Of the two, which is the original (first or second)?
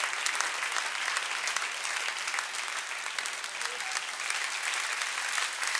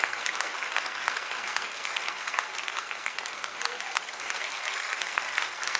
first